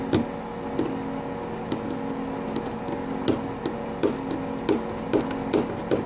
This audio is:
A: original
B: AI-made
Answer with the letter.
A